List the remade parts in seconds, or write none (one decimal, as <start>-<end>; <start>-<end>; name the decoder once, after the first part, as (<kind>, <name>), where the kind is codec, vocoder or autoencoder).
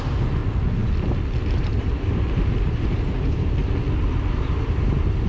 0.0-0.4 (vocoder, BigVGAN v2); 1.5-3.6; 4.3-5.3